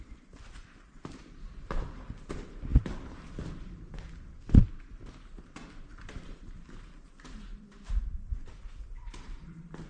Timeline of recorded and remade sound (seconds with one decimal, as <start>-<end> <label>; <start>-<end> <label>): 0.0-4.6 remade; 4.6-5.9 recorded; 5.9-9.9 remade